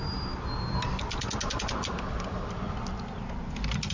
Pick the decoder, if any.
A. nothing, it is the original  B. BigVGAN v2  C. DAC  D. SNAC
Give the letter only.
A